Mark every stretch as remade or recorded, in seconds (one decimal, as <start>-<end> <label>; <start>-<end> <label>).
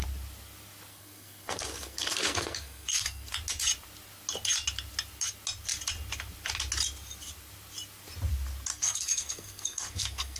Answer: 0.0-0.9 recorded; 0.9-3.3 remade; 3.3-8.7 recorded; 8.7-10.4 remade